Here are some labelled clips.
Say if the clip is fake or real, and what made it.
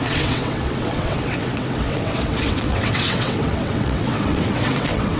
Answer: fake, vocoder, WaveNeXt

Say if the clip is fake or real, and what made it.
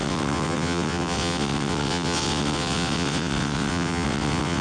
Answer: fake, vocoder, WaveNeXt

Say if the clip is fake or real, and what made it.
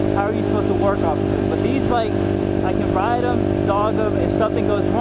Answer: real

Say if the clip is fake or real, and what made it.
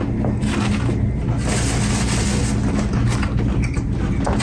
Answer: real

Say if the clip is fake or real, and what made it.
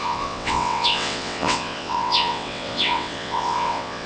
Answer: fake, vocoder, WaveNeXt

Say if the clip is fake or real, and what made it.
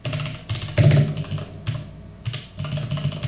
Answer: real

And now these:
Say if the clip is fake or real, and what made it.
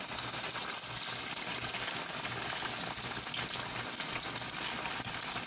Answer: real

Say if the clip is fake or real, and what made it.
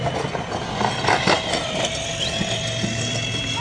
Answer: real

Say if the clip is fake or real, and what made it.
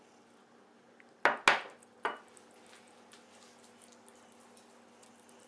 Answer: real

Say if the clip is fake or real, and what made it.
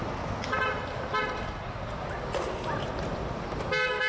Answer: real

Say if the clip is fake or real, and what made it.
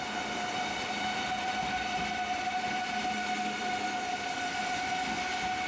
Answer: real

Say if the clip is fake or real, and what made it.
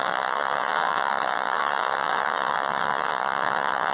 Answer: fake, vocoder, WaveNeXt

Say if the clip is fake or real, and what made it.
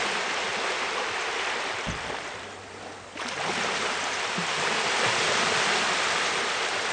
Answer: real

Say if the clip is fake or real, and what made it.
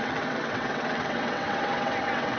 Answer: fake, vocoder, WaveNeXt